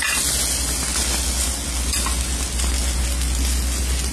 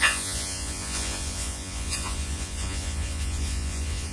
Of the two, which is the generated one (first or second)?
second